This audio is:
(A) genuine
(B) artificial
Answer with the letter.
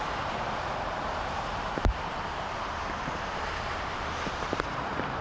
B